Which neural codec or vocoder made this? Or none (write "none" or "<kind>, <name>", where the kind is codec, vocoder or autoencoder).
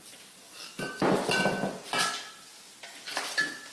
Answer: none